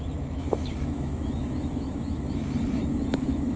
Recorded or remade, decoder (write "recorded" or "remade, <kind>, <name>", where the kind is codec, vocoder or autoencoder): remade, autoencoder, DAC-VAE